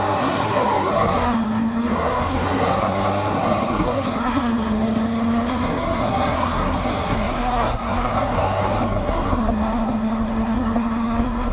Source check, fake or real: fake